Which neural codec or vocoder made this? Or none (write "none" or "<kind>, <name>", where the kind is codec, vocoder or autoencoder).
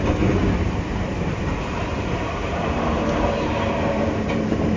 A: vocoder, BigVGAN v2